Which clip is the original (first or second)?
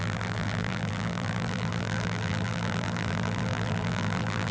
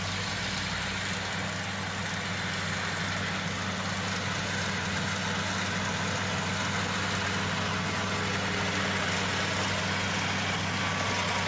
second